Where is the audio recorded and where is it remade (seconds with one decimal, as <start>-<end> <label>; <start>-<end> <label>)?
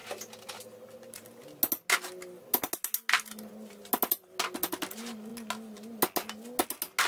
0.0-7.1 recorded